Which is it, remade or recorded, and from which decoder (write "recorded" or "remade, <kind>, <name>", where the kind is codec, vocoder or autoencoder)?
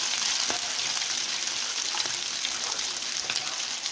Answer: recorded